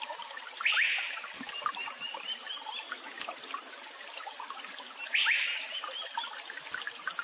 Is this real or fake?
real